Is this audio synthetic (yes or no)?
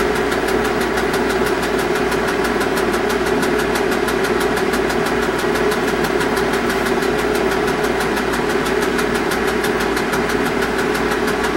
no